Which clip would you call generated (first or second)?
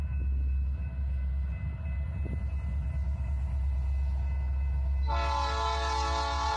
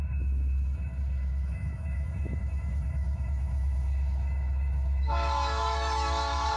second